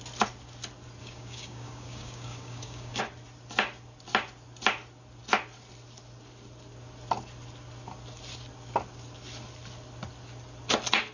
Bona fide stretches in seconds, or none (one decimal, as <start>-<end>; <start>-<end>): 0.0-1.0; 3.0-11.1